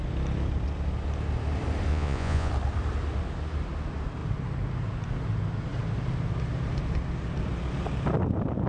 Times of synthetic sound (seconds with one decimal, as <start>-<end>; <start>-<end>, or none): 1.9-2.5

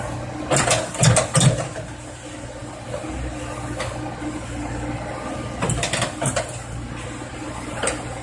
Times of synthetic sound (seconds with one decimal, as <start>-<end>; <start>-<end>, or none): none

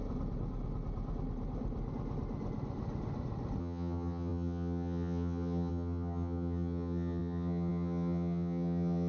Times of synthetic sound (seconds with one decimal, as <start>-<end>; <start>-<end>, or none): 3.6-9.1

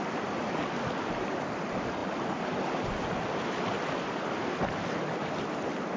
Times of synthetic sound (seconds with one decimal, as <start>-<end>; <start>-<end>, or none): none

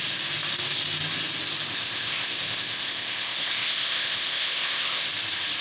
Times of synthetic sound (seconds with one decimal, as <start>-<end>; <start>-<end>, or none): 1.7-5.1

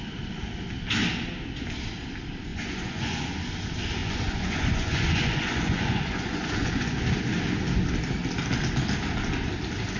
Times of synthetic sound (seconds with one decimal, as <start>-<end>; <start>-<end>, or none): 2.5-3.2; 4.0-7.0

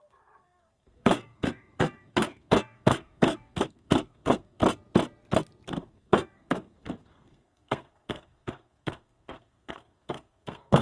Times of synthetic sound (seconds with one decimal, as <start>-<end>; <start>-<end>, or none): 0.0-4.6; 5.7-10.8